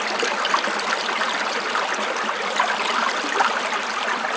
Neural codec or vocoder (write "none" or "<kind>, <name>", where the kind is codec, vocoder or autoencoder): none